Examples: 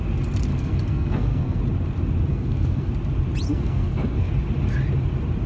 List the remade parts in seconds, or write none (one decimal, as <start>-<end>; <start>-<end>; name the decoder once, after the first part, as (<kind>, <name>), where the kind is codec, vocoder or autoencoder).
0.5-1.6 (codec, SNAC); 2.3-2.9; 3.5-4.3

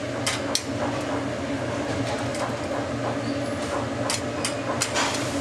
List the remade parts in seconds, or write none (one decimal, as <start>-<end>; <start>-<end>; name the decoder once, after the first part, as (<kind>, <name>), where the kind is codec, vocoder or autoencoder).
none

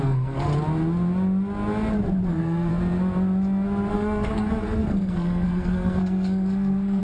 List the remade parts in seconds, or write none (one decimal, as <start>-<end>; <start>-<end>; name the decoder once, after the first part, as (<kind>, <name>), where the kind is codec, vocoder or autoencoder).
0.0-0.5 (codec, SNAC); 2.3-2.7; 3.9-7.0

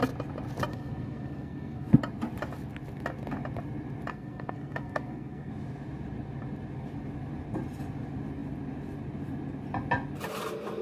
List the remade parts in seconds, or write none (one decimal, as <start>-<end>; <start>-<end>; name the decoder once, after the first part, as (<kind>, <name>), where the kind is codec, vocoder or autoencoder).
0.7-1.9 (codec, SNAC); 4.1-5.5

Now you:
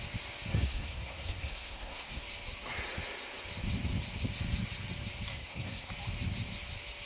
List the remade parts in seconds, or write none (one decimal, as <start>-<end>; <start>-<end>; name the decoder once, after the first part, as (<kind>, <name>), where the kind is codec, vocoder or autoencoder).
0.5-2.2 (codec, SNAC); 5.3-5.9

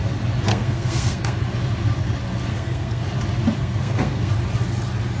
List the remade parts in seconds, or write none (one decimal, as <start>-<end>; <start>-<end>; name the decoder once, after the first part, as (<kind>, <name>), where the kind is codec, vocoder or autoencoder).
0.5-1.4 (codec, SNAC); 2.5-3.0; 3.6-4.3

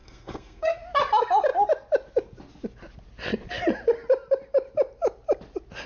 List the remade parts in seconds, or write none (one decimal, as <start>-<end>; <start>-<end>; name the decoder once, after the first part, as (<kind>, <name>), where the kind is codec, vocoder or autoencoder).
0.0-0.8 (codec, SNAC)

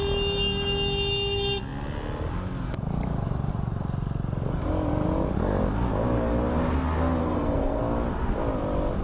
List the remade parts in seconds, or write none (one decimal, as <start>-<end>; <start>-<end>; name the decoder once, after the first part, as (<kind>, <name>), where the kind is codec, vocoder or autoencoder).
7.2-7.8 (codec, SNAC)